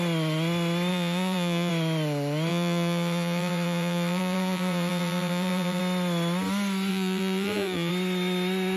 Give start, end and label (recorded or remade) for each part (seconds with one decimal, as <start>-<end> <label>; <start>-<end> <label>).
0.0-0.9 recorded; 0.9-1.7 remade; 1.7-2.5 recorded; 2.5-5.8 remade; 5.8-6.9 recorded; 6.9-7.9 remade; 7.9-8.8 recorded